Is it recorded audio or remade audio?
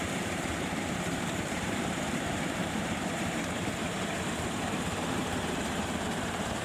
remade